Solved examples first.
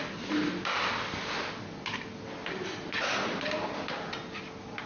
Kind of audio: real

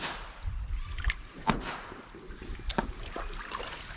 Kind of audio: real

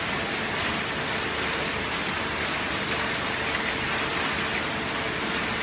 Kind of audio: real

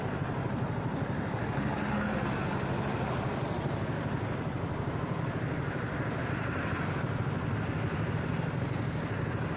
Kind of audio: real